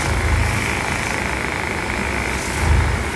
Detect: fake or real real